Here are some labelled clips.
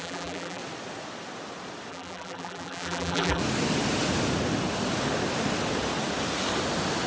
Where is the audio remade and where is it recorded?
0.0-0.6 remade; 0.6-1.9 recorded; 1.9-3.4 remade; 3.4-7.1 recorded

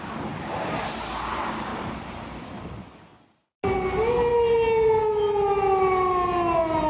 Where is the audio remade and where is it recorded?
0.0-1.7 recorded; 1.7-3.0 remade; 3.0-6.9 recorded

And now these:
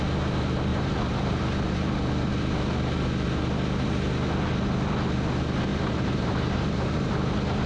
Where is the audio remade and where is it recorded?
0.0-0.7 recorded; 0.7-1.4 remade; 1.4-5.7 recorded; 5.7-7.1 remade; 7.1-7.7 recorded

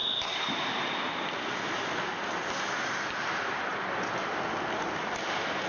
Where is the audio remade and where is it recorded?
0.0-3.3 recorded; 3.3-3.7 remade; 3.7-5.0 recorded; 5.0-5.7 remade